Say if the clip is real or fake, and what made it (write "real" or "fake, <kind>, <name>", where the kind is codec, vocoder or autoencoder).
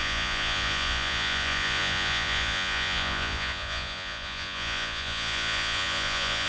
fake, vocoder, Vocos